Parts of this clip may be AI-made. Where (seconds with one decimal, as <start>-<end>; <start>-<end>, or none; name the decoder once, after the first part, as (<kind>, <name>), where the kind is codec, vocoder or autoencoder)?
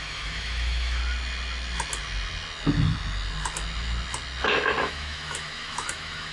0.0-1.0 (autoencoder, DAC-VAE); 4.8-6.3